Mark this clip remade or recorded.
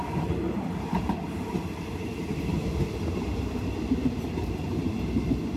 remade